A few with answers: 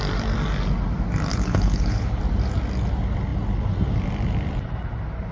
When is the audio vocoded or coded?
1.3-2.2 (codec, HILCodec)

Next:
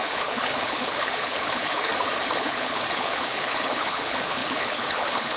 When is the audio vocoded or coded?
0.0-1.9 (codec, HILCodec); 2.4-5.4

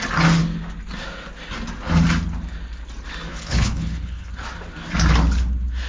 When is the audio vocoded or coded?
3.3-4.3 (codec, HILCodec)

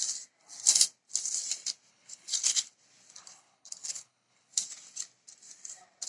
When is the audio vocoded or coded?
1.9-2.7 (codec, HILCodec); 3.2-4.5

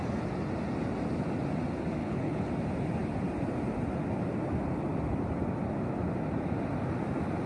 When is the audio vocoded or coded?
2.0-2.5 (codec, HILCodec)

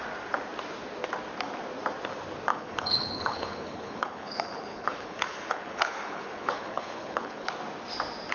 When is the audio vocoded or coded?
2.5-7.5 (codec, HILCodec)

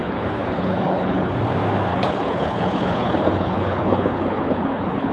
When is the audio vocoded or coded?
0.0-1.3 (codec, HILCodec); 1.9-5.1